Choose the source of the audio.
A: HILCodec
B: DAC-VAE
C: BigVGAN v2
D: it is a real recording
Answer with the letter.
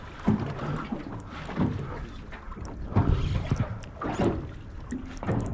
D